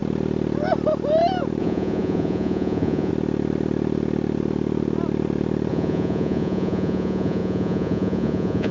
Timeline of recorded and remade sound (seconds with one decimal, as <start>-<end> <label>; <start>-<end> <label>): 0.0-1.6 recorded; 1.6-3.1 remade; 3.1-5.7 recorded; 5.7-8.7 remade